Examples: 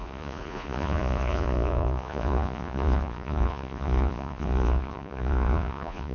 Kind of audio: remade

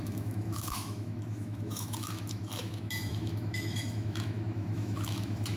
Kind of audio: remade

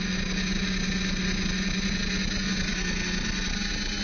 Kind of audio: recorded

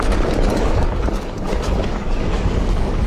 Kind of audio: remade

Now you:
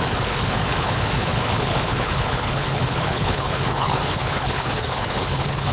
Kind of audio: remade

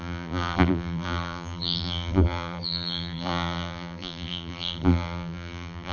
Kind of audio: remade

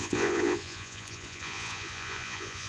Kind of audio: remade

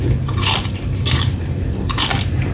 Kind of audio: recorded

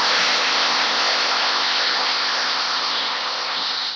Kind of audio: remade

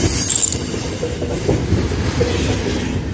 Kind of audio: recorded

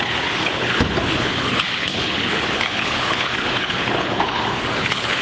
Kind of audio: remade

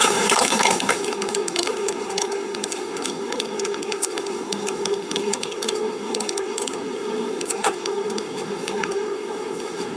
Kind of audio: remade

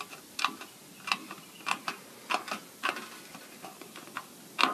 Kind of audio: recorded